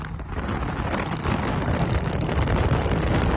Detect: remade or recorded recorded